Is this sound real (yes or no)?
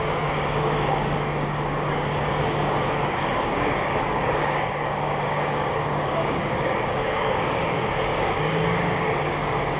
no